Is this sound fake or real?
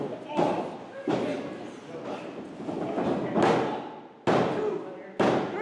real